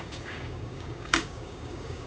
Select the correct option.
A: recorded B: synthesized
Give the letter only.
B